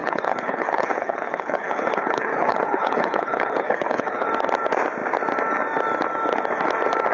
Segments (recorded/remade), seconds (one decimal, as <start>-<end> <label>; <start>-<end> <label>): 0.0-4.3 remade; 4.3-7.1 recorded